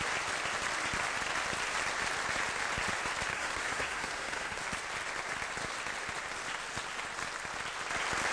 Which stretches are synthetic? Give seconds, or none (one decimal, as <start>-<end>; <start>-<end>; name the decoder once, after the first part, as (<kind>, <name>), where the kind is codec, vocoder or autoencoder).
3.3-4.6 (codec, SNAC)